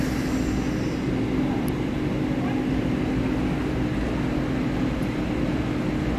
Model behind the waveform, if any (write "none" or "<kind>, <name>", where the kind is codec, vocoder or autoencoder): none